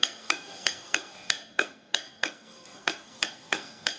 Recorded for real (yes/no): no